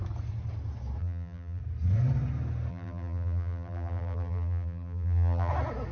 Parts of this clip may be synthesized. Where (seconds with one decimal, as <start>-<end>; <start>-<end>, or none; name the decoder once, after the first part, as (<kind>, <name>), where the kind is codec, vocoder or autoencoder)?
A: 1.0-1.6 (vocoder, BigVGAN v2); 2.7-5.5